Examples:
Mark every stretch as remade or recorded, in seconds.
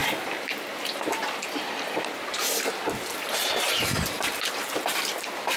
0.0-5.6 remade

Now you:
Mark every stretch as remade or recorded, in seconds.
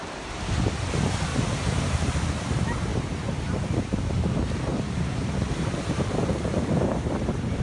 0.0-1.3 recorded; 1.3-2.0 remade; 2.0-2.9 recorded; 2.9-3.4 remade; 3.4-4.7 recorded; 4.7-7.6 remade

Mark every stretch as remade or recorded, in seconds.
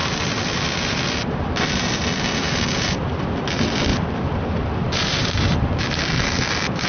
0.0-3.9 recorded; 3.9-5.8 remade; 5.8-6.9 recorded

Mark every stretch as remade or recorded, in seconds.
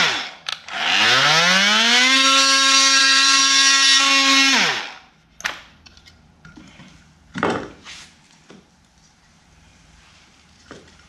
0.0-0.5 remade; 0.5-3.0 recorded; 3.0-3.4 remade; 3.4-6.0 recorded; 6.0-6.8 remade; 6.8-9.1 recorded; 9.1-11.1 remade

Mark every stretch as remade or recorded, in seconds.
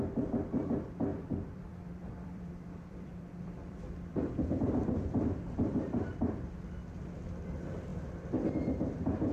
0.0-1.1 recorded; 1.1-6.2 remade; 6.2-9.3 recorded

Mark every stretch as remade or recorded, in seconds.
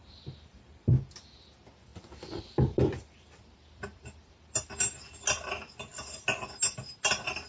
0.0-0.9 remade; 0.9-1.9 recorded; 1.9-4.3 remade; 4.3-7.5 recorded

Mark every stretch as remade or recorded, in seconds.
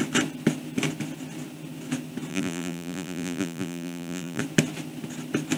0.0-2.3 recorded; 2.3-4.4 remade; 4.4-5.6 recorded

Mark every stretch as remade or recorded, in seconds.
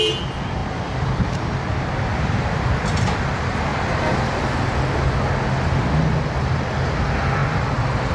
0.0-3.7 recorded; 3.7-4.4 remade; 4.4-7.4 recorded; 7.4-8.1 remade